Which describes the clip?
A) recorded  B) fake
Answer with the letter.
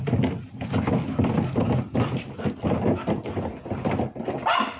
A